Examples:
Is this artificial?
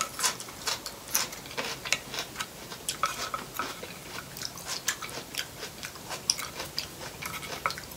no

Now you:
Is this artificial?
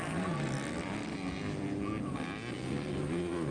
no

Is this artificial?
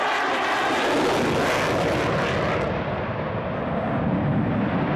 no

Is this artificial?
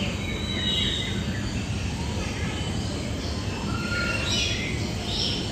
no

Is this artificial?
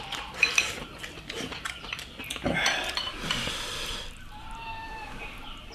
yes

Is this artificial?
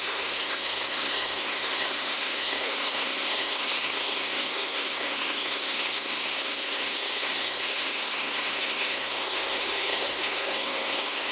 yes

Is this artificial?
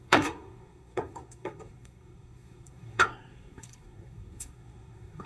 yes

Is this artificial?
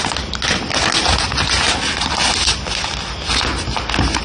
no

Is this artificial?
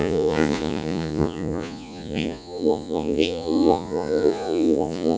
yes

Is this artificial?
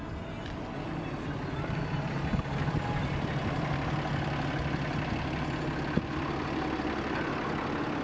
no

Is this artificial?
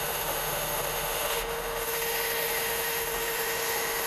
yes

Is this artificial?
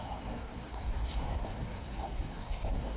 yes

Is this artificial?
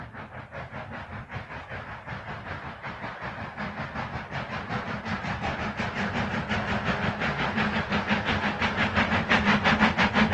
no